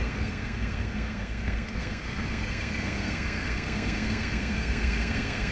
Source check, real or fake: fake